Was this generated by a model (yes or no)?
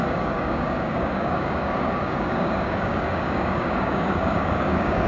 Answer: yes